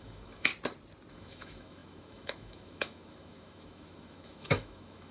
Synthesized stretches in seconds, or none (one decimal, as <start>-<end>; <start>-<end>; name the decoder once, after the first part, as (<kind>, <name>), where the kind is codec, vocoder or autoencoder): 0.0-0.5 (autoencoder, DAC-VAE); 1.1-5.1